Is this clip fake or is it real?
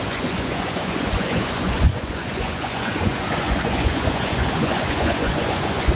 fake